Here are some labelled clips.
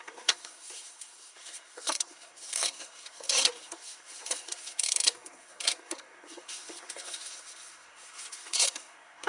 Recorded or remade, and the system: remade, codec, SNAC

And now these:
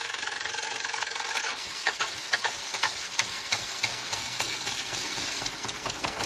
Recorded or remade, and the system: remade, codec, SNAC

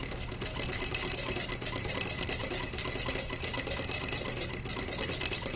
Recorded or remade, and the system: recorded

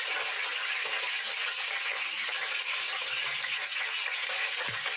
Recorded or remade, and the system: recorded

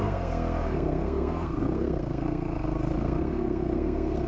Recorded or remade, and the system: remade, codec, SNAC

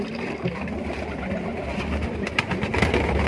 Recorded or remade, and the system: recorded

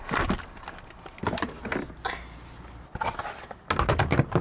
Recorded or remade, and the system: recorded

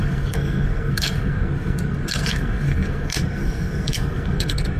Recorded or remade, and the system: remade, codec, SNAC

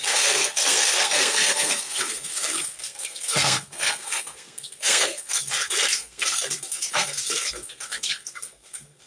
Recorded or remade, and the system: remade, codec, SNAC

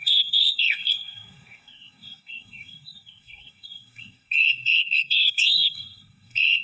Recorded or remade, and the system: remade, codec, SNAC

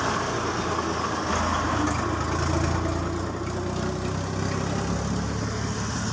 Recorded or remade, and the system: recorded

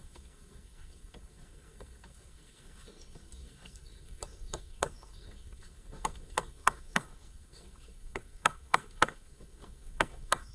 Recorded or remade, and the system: remade, codec, SNAC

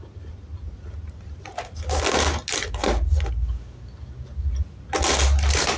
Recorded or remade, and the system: recorded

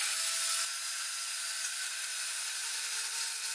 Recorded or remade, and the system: recorded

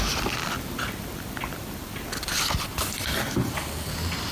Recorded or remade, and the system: recorded